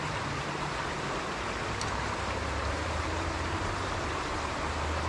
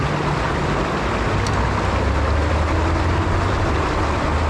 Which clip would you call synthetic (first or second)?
first